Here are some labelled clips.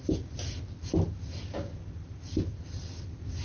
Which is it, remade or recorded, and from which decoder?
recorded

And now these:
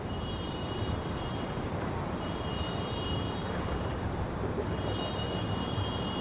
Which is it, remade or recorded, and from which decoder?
remade, vocoder, BigVGAN v2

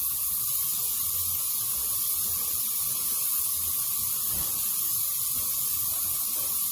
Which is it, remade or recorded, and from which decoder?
recorded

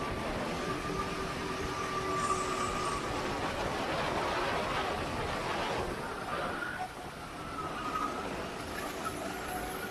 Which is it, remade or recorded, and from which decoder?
recorded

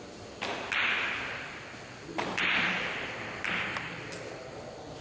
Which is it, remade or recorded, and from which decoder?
recorded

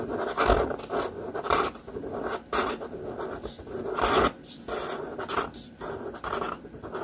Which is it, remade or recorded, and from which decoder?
recorded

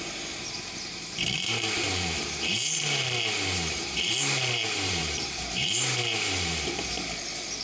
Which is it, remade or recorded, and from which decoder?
remade, vocoder, BigVGAN v2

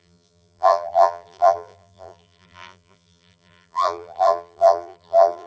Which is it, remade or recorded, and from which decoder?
remade, vocoder, BigVGAN v2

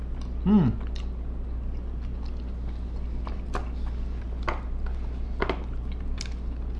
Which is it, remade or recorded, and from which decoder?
recorded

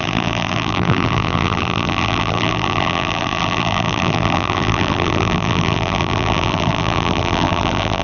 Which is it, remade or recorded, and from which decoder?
remade, vocoder, BigVGAN v2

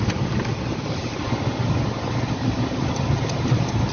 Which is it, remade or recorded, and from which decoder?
remade, vocoder, BigVGAN v2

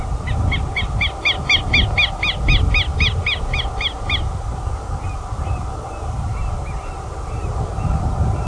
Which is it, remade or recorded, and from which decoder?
recorded